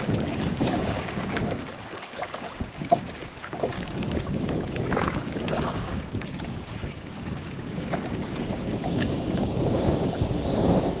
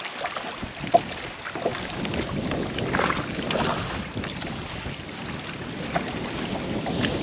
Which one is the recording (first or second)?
second